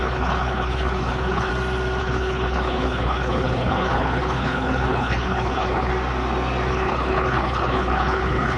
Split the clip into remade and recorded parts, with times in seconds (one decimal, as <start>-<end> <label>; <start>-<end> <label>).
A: 0.0-1.5 remade; 1.5-2.0 recorded; 2.0-5.9 remade; 5.9-6.7 recorded; 6.7-8.6 remade